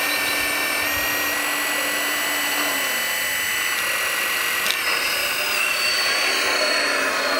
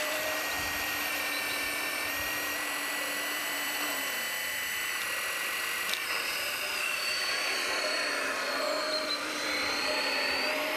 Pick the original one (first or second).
first